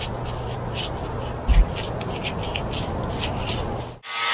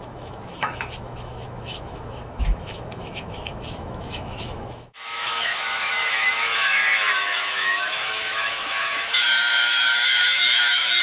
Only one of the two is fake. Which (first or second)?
second